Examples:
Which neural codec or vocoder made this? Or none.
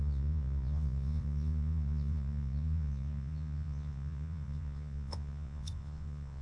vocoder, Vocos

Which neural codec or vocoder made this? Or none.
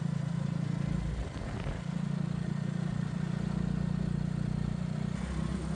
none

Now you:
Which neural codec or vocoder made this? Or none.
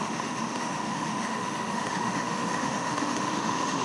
autoencoder, DAC-VAE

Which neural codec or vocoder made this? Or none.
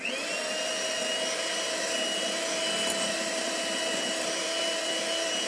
none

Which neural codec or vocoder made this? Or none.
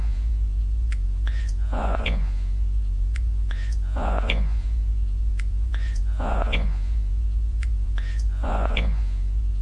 vocoder, Vocos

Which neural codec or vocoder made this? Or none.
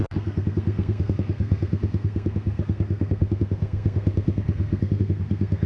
codec, SNAC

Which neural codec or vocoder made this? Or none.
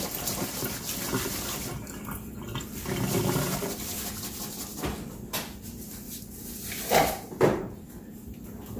none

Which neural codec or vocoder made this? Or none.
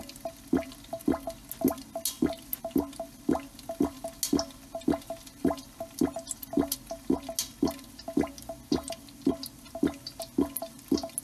none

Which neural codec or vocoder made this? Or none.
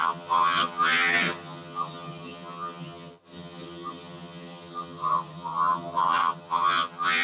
vocoder, HiFi-GAN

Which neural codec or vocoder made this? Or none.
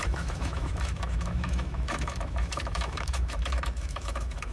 autoencoder, DAC-VAE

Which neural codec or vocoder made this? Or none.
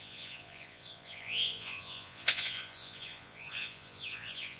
vocoder, Vocos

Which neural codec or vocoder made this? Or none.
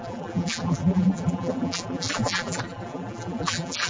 vocoder, BigVGAN v2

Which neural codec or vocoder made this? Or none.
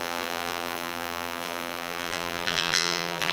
vocoder, BigVGAN v2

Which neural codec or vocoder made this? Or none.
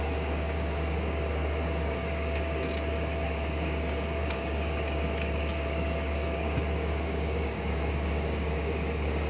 codec, DAC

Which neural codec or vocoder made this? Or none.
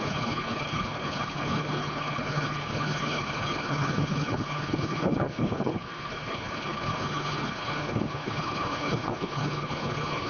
codec, HILCodec